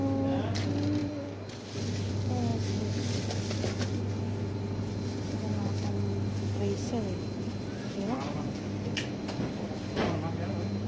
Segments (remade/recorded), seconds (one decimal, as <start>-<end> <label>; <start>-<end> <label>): 0.0-10.9 recorded